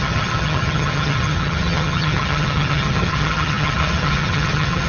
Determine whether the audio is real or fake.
fake